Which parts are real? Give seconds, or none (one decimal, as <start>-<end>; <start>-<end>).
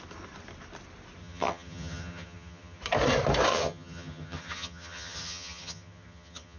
0.0-1.2; 2.8-3.5